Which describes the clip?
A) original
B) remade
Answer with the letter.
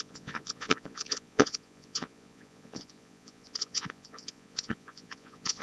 B